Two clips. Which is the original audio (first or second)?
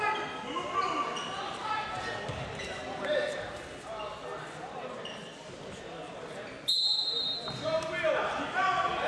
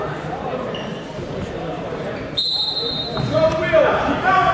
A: first